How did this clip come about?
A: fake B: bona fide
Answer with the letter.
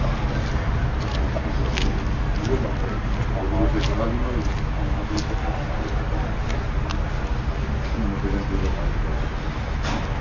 B